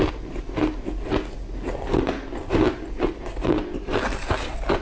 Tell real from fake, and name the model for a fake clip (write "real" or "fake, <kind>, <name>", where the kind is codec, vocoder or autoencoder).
real